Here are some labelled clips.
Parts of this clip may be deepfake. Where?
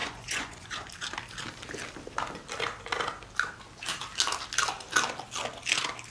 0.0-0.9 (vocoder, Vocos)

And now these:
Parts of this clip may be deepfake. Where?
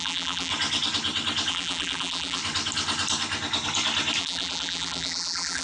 0.0-0.5 (vocoder, BigVGAN v2); 1.5-2.4; 4.2-5.6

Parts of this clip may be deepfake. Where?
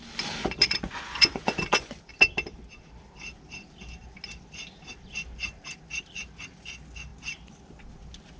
0.4-2.1 (vocoder, Vocos)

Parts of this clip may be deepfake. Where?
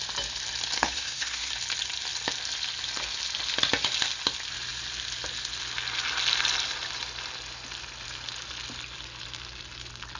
0.8-1.5 (codec, SNAC)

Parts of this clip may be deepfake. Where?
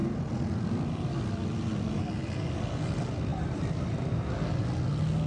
0.0-2.0 (vocoder, BigVGAN v2); 3.3-3.9